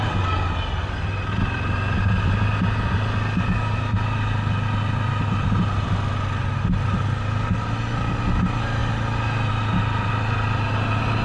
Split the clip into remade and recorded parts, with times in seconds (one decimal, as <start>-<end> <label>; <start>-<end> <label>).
0.0-11.2 recorded